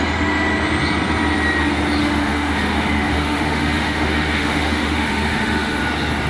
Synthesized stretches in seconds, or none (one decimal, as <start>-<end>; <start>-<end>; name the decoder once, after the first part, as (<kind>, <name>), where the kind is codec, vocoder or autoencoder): 2.0-5.8 (autoencoder, DAC-VAE)